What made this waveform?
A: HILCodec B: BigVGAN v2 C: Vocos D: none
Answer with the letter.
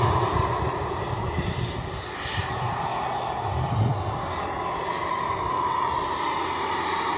D